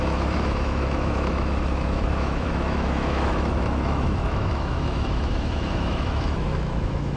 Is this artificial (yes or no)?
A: yes